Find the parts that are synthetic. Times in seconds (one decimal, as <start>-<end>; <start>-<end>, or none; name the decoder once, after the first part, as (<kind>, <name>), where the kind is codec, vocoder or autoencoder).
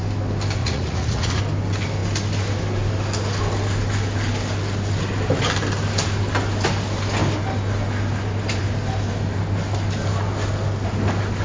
0.6-1.4 (vocoder, Vocos)